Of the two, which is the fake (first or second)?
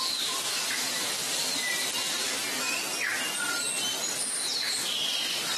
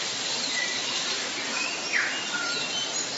second